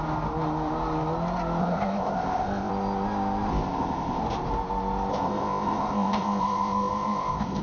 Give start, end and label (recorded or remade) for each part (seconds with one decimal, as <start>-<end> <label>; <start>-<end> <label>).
0.0-1.6 recorded; 1.6-2.7 remade; 2.7-3.5 recorded; 3.5-4.2 remade; 4.2-5.1 recorded; 5.1-7.6 remade